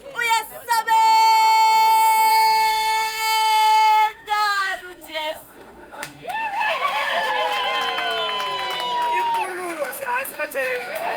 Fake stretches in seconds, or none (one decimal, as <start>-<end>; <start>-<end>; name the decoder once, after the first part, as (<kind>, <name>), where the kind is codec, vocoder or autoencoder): 2.3-7.3 (autoencoder, DAC-VAE); 9.5-11.2